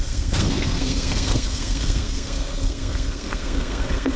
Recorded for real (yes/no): no